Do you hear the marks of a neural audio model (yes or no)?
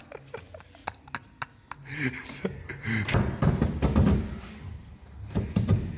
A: no